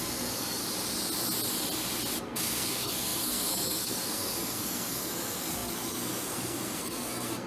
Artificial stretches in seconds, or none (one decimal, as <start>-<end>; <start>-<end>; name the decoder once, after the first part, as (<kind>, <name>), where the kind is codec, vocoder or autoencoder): 0.0-0.6 (codec, SNAC); 2.2-7.5